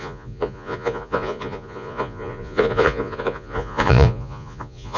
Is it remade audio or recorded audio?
remade